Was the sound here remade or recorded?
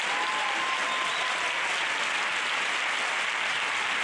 recorded